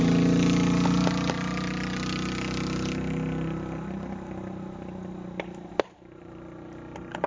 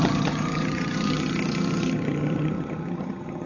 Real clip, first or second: first